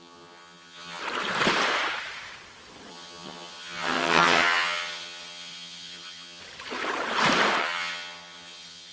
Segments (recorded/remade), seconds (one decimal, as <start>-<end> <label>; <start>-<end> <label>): 0.0-1.0 remade; 1.0-2.9 recorded; 2.9-6.4 remade; 6.4-7.6 recorded; 7.6-8.9 remade